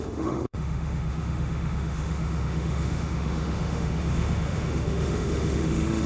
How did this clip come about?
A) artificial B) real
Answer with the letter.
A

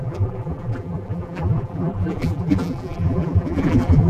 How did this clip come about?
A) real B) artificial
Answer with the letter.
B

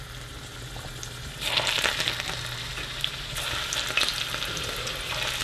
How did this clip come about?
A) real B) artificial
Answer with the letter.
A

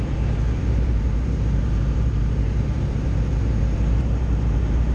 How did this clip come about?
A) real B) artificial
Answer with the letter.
B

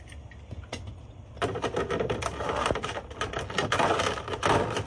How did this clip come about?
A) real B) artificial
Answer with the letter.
A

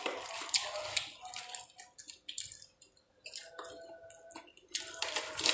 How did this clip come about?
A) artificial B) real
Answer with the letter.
B